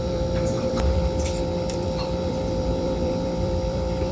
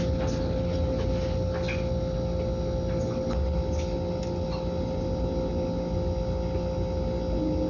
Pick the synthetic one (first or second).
first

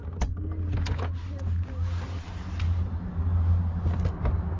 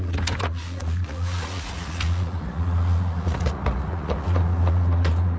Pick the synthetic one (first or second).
second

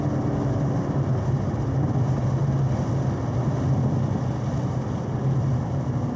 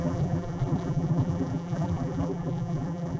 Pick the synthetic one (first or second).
second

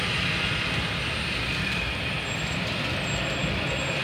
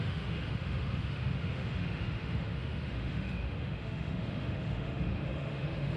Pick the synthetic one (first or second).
second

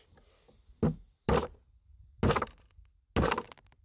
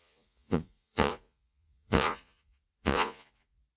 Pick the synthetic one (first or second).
second